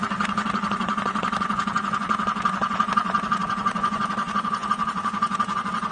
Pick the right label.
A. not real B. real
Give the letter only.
A